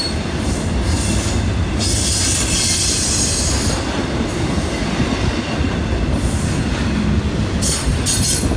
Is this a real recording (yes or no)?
yes